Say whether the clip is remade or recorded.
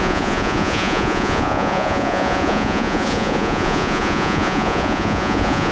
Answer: remade